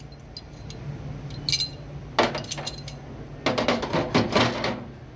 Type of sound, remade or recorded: recorded